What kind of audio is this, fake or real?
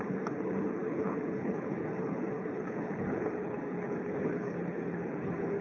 fake